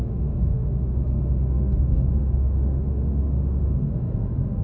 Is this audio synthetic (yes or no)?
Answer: yes